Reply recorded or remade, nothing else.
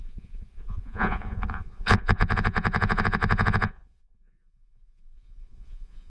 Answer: remade